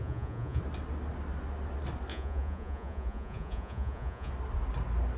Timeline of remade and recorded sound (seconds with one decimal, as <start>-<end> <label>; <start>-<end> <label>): 0.0-0.6 remade; 0.6-2.1 recorded; 2.1-4.3 remade; 4.3-5.2 recorded